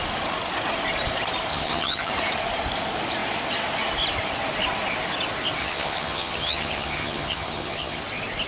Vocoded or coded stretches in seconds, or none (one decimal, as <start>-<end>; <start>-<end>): 1.5-2.1; 5.6-8.0